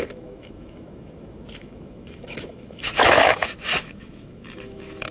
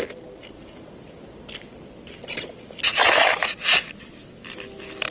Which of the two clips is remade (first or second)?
first